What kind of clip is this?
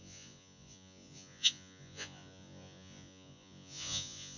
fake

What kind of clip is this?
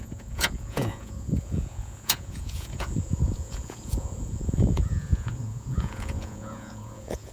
fake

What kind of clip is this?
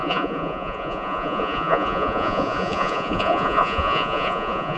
fake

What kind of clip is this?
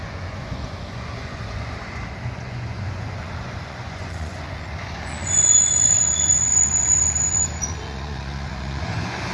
fake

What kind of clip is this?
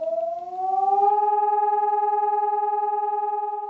real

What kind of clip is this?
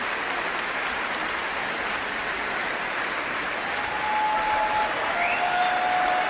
real